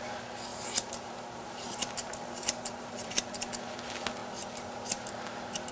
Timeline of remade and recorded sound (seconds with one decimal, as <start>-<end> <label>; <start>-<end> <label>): 0.0-0.5 recorded; 0.5-3.2 remade; 3.2-5.7 recorded